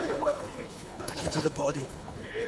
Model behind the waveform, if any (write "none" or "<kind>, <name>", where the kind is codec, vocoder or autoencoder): codec, HILCodec